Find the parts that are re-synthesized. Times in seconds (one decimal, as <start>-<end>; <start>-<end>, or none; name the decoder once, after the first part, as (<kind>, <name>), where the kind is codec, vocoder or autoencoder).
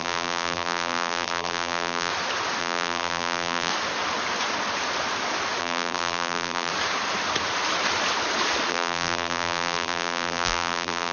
0.0-2.1 (vocoder, BigVGAN v2); 2.6-3.7; 5.6-6.7; 8.7-11.1